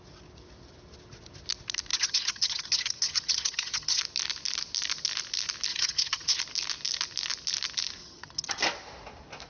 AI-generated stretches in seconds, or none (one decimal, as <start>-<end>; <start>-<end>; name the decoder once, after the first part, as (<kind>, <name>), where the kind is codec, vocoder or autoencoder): 1.9-4.0 (vocoder, HiFi-GAN); 5.7-6.4; 8.0-8.6